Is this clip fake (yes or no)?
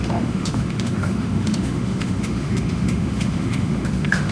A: yes